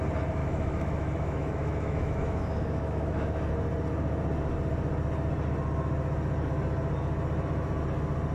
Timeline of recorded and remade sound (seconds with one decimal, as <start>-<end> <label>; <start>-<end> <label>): 0.0-0.4 recorded; 0.4-3.5 remade; 3.5-8.3 recorded